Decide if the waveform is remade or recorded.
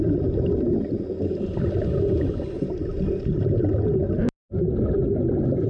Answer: recorded